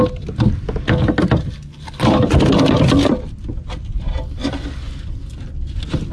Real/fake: real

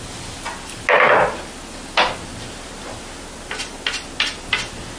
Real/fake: real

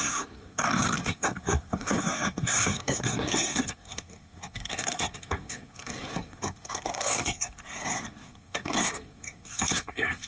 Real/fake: fake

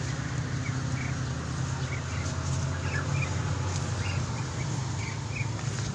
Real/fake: real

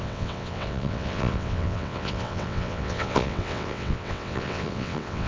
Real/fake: fake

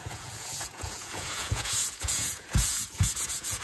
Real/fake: fake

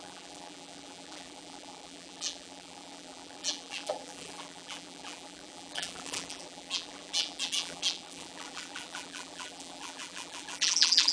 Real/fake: fake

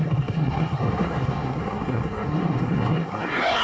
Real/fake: fake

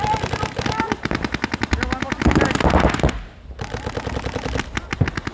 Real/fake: real